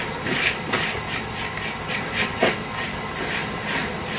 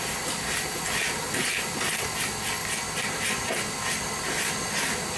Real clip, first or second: second